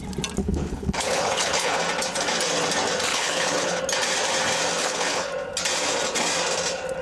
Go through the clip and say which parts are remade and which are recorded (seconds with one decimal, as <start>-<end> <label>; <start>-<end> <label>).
0.0-0.4 recorded; 0.4-1.8 remade; 1.8-3.1 recorded; 3.1-3.8 remade; 3.8-4.8 recorded; 4.8-5.3 remade; 5.3-7.0 recorded